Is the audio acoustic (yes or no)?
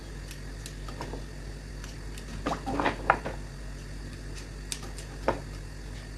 yes